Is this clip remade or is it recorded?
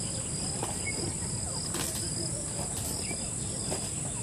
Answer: recorded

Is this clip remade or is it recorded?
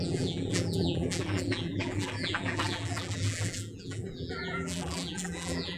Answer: remade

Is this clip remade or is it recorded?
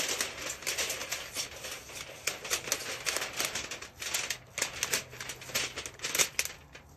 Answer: recorded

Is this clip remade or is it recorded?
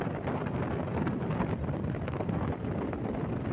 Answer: recorded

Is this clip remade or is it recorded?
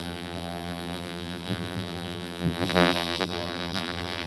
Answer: remade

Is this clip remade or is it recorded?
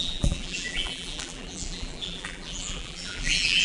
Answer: remade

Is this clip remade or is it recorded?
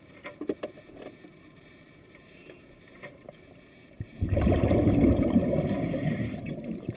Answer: remade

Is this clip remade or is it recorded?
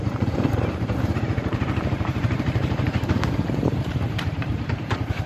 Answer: remade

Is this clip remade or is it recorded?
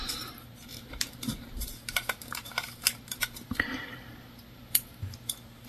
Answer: remade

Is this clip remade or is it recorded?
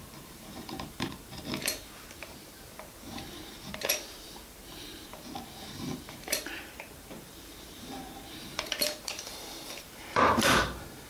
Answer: remade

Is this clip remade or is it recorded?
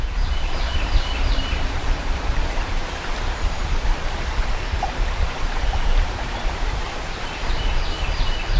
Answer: remade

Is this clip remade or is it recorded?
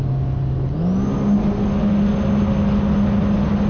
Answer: recorded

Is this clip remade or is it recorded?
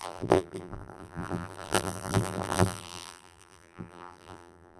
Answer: remade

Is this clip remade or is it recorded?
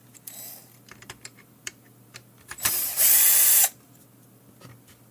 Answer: remade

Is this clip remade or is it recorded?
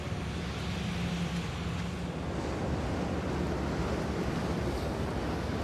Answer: recorded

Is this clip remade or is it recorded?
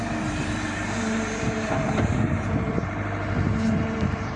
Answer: remade